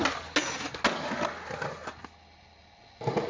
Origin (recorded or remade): recorded